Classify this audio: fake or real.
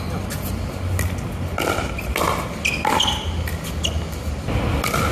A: real